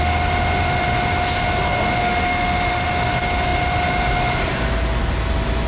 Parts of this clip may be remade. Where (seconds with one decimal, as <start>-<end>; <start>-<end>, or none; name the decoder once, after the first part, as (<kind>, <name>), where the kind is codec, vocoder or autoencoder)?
2.0-2.9 (autoencoder, DAC-VAE)